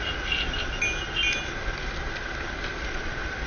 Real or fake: real